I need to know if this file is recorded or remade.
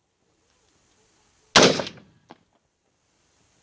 recorded